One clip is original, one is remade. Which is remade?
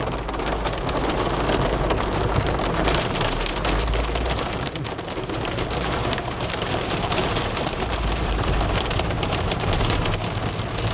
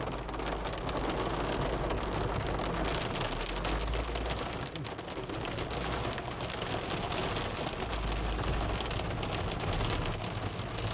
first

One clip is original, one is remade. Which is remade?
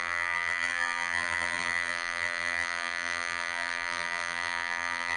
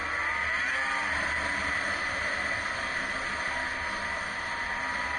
first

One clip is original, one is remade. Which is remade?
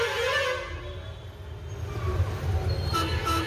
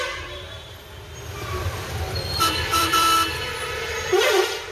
second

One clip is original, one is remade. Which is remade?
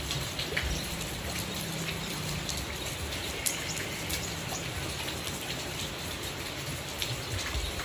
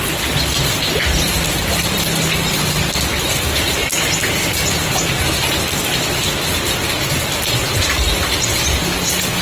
first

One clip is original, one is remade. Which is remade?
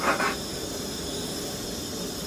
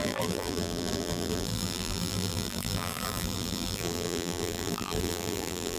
second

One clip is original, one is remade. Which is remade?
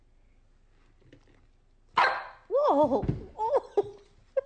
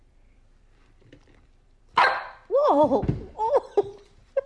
second